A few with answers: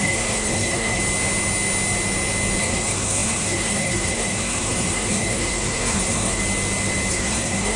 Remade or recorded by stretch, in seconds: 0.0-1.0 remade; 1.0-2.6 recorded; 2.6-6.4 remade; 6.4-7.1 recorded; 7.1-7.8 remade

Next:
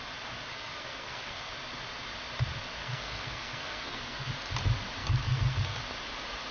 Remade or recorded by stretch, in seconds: 0.0-0.5 recorded; 0.5-1.5 remade; 1.5-2.8 recorded; 2.8-4.3 remade; 4.3-5.0 recorded; 5.0-5.8 remade; 5.8-6.5 recorded

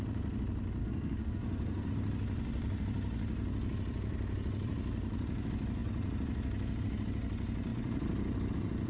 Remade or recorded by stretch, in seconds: 0.0-0.8 recorded; 0.8-1.9 remade; 1.9-8.9 recorded